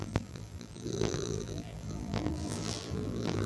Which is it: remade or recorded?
remade